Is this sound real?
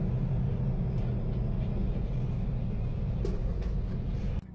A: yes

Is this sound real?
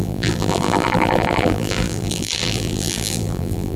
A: no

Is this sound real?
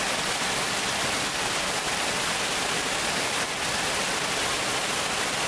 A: yes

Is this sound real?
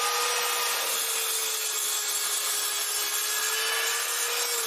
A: yes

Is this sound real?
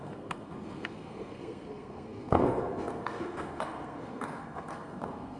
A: no